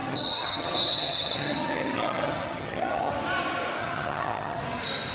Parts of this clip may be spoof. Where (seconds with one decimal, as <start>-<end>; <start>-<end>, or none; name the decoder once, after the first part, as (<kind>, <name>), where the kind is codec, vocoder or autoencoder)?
0.0-3.1 (vocoder, HiFi-GAN); 3.8-4.6